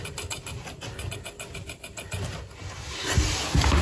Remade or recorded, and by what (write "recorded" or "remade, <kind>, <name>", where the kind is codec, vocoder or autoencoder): recorded